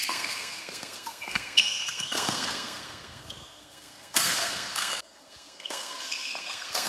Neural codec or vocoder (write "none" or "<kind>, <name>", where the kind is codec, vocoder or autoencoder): codec, SNAC